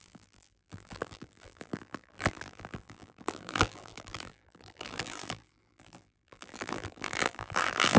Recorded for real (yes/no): no